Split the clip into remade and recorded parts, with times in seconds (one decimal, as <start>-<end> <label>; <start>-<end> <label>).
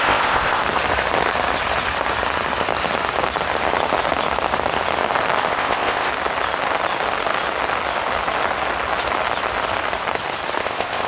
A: 0.0-0.6 remade; 0.6-5.5 recorded; 5.5-6.1 remade; 6.1-10.6 recorded; 10.6-11.1 remade